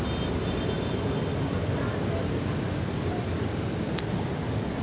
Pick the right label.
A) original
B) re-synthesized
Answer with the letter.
A